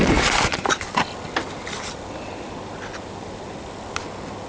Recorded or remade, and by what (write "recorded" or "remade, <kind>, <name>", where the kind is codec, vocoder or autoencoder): recorded